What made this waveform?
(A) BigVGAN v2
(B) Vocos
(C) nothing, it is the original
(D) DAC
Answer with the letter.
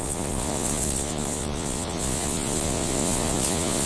B